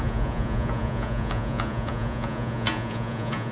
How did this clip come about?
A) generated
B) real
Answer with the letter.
A